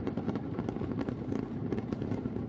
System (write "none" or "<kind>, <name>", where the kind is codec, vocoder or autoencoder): vocoder, BigVGAN v2